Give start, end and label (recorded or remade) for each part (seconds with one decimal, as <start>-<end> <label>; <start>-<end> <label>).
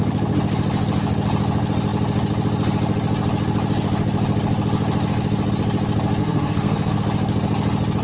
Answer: 0.0-6.2 recorded; 6.2-7.0 remade; 7.0-8.0 recorded